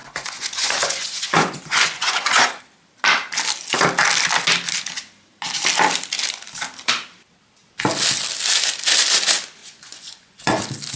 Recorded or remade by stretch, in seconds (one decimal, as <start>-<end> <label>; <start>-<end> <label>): 0.0-2.6 remade; 2.6-9.6 recorded; 9.6-10.6 remade; 10.6-11.0 recorded